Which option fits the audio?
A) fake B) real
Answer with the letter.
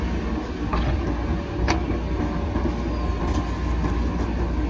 B